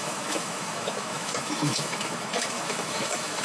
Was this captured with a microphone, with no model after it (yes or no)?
no